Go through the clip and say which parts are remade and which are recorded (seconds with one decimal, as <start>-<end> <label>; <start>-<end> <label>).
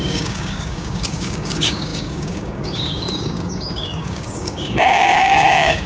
0.0-5.9 remade